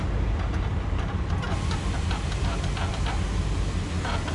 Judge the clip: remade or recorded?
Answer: recorded